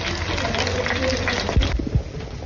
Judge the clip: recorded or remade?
recorded